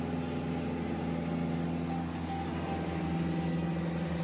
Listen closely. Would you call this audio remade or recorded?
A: recorded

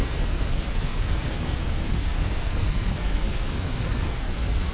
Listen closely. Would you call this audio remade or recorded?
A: remade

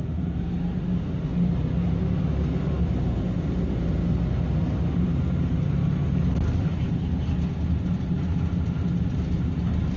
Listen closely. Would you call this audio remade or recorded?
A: recorded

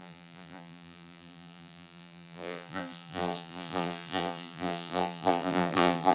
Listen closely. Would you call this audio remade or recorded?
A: remade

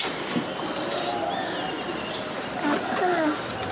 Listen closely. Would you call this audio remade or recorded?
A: recorded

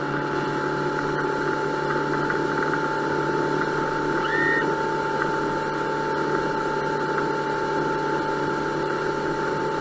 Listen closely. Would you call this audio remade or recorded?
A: recorded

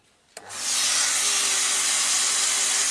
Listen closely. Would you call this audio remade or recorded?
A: recorded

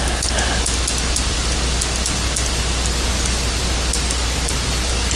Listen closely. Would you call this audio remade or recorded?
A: recorded